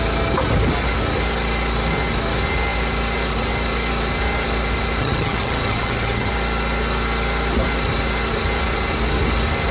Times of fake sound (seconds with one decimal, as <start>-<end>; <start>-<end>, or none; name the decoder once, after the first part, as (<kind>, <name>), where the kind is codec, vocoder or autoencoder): 5.0-6.3 (vocoder, HiFi-GAN)